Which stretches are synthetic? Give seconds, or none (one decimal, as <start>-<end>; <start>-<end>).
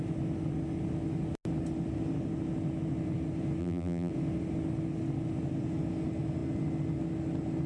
3.6-4.1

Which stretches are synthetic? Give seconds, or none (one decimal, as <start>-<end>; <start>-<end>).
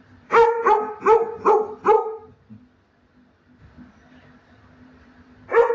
0.0-2.0; 3.6-5.7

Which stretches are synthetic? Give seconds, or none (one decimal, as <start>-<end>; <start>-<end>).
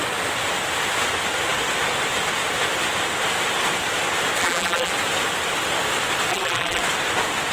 4.4-4.9; 6.3-6.8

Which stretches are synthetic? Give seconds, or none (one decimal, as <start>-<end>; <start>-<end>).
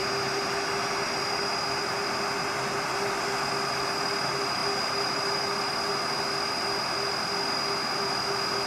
none